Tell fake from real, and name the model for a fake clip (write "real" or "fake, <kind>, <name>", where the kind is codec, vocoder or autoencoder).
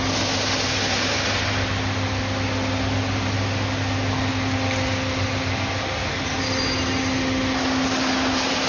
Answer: real